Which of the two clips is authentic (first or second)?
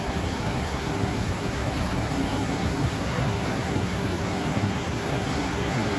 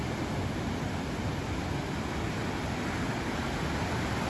second